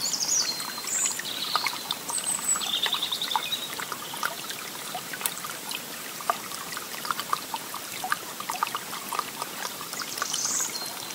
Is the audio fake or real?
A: fake